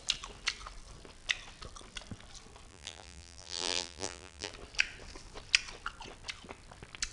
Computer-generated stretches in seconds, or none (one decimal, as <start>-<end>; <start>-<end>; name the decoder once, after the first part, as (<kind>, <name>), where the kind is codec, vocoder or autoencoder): 2.7-4.5 (vocoder, BigVGAN v2)